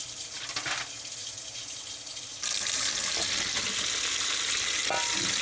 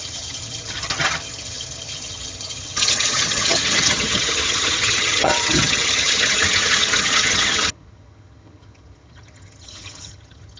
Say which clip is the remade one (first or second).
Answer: second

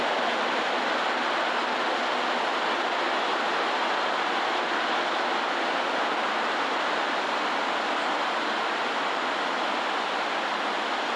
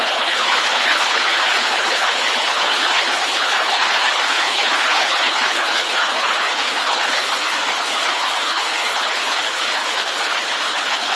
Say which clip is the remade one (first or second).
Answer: second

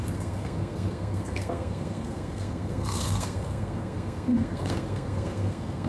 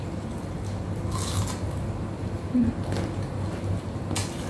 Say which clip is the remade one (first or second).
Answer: first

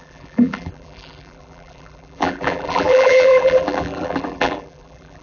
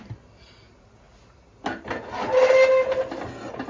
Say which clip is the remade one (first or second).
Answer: first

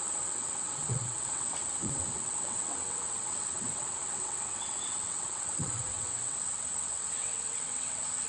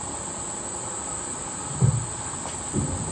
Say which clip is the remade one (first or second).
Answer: first